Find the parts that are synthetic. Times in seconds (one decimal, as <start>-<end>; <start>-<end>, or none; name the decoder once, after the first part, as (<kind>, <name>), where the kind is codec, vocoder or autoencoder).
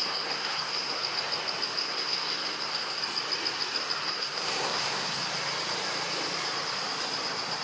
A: 0.0-1.0 (codec, SNAC); 1.8-3.0; 4.0-5.2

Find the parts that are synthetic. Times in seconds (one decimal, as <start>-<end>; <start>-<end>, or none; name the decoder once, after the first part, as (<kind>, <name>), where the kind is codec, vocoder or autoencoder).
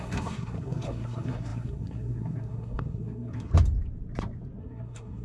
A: 0.0-3.5 (codec, SNAC); 4.6-5.2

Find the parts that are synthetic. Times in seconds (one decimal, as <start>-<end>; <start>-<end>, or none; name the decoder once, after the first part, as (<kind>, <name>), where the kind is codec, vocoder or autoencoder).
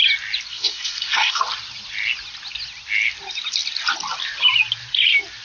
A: 0.5-1.4 (codec, SNAC)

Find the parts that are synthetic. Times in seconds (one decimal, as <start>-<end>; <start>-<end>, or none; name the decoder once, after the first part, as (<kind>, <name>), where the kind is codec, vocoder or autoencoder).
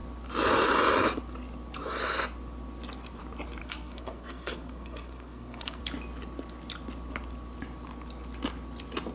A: 3.6-5.8 (codec, SNAC)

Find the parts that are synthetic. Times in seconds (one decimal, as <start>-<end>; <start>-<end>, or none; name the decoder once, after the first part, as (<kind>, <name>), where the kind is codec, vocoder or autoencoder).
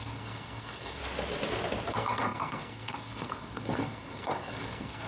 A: 0.0-1.0 (codec, SNAC); 1.9-5.1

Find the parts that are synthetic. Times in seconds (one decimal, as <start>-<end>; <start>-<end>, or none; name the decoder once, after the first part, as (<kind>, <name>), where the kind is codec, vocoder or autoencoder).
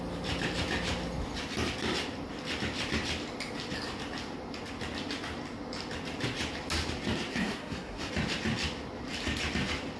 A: 7.3-8.1 (codec, SNAC)